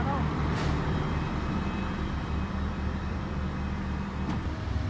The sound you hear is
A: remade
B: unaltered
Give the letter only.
A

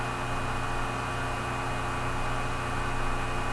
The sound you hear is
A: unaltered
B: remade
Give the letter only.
A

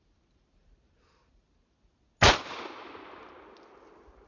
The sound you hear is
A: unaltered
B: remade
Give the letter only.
A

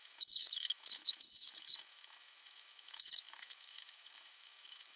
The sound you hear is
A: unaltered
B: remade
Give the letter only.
B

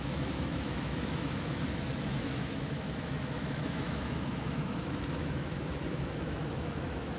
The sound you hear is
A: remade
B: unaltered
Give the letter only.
A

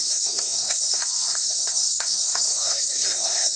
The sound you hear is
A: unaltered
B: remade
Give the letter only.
B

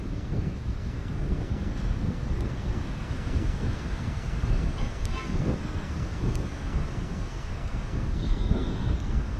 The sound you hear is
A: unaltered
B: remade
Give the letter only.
B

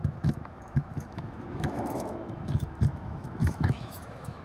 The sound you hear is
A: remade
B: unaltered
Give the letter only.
A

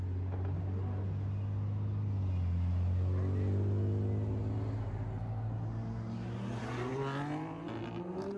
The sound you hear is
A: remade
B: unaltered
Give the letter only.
B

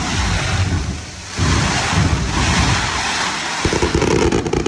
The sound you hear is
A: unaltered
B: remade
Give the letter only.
A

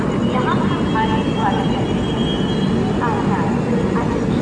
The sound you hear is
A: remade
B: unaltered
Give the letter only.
B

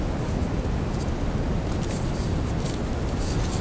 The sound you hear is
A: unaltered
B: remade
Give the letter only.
A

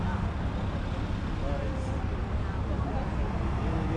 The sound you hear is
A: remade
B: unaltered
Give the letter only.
B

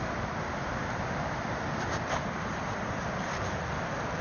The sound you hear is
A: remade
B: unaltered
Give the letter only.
A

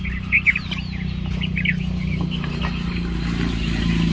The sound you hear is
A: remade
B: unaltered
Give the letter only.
B